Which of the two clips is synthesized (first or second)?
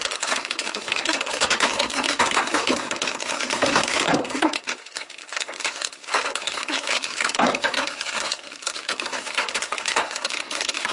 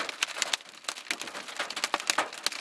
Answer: first